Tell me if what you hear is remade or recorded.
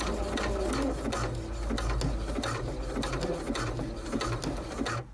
recorded